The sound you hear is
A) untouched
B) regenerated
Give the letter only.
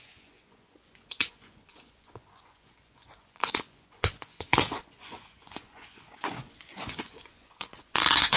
B